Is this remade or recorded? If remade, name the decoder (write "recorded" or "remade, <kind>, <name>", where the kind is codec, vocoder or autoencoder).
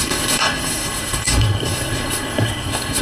remade, codec, SNAC